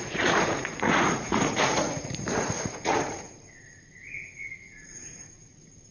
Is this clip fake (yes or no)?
yes